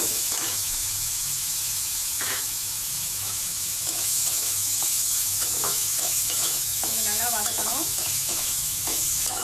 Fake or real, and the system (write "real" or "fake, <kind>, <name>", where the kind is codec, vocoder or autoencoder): fake, autoencoder, DAC-VAE